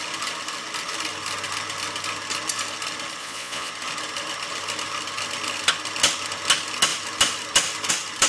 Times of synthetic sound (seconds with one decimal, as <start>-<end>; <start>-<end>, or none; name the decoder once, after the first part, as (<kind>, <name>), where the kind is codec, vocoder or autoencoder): 3.2-3.7 (vocoder, Vocos)